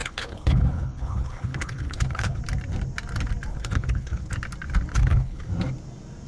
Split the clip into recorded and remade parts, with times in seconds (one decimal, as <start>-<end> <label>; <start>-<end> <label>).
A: 0.0-2.4 remade; 2.4-3.5 recorded; 3.5-4.3 remade; 4.3-4.9 recorded; 4.9-5.5 remade; 5.5-6.3 recorded